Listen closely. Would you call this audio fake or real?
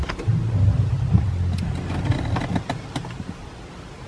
real